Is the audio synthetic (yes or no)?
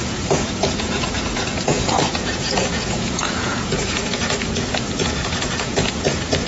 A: yes